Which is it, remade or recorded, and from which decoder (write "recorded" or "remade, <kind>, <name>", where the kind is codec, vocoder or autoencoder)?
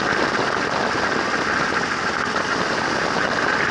recorded